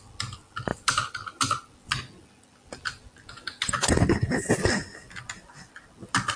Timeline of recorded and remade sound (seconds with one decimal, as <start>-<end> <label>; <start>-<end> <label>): 0.0-6.4 recorded